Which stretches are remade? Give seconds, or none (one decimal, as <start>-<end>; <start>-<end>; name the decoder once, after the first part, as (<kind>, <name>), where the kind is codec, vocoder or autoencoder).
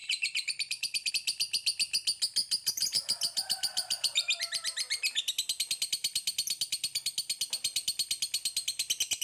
0.0-1.1 (vocoder, BigVGAN v2); 2.4-4.4